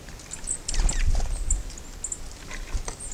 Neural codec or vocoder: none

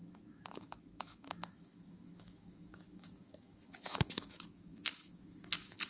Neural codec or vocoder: autoencoder, DAC-VAE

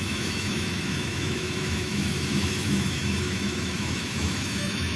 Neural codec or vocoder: autoencoder, DAC-VAE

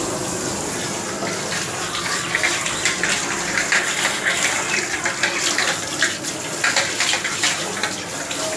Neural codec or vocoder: none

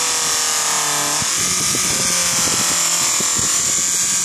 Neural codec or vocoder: none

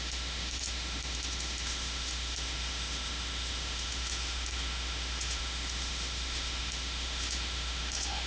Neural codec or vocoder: autoencoder, DAC-VAE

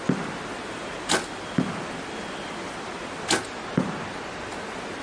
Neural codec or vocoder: none